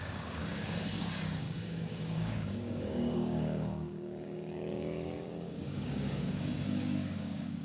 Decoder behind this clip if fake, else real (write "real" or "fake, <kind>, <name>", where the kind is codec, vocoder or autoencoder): fake, codec, DAC